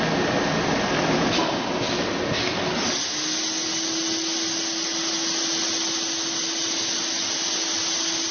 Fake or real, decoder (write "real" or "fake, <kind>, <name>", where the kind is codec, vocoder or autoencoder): real